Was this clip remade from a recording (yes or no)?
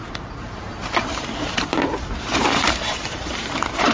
yes